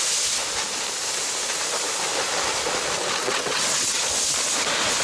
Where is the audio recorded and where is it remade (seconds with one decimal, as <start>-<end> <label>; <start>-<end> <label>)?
0.0-3.2 recorded; 3.2-4.0 remade; 4.0-5.0 recorded